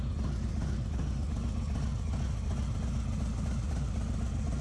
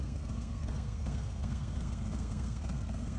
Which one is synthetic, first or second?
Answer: second